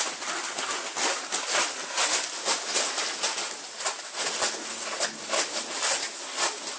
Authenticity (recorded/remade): recorded